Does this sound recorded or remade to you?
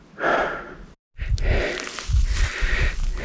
recorded